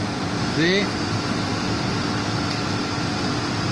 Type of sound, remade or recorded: recorded